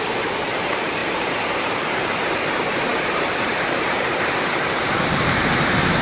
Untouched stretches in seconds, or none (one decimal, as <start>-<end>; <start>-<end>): none

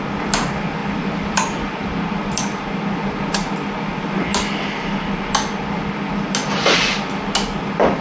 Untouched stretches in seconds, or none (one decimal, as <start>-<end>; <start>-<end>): 0.0-0.8; 2.4-8.0

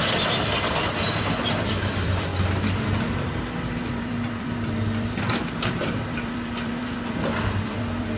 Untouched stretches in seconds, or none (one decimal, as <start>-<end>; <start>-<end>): 2.3-3.5

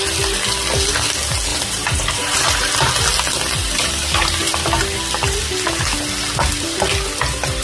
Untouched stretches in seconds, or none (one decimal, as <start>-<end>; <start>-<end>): 0.0-1.5; 2.9-3.6; 4.5-7.6

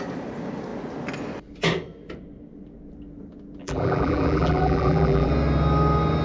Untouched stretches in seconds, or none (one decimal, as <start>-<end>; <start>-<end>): 0.0-3.6; 5.3-6.2

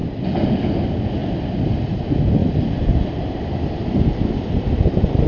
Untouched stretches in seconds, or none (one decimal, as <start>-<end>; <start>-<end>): 0.5-1.2; 2.0-2.4; 4.3-5.3

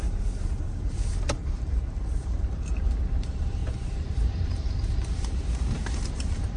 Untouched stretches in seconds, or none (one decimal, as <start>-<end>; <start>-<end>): none

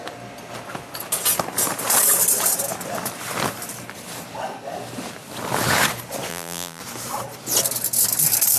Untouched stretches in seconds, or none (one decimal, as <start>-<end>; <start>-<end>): 0.0-6.3; 6.8-8.6